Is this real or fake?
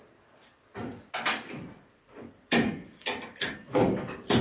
fake